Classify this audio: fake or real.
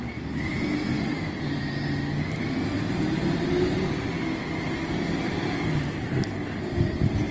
real